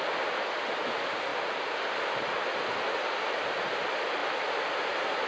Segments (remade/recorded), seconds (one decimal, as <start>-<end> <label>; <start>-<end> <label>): 0.0-5.3 recorded